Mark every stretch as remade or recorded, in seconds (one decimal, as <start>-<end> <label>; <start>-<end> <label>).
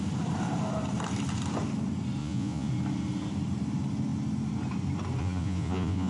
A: 0.0-2.2 recorded; 2.2-2.7 remade; 2.7-5.2 recorded; 5.2-6.1 remade